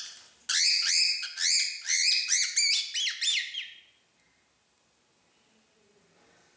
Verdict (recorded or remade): recorded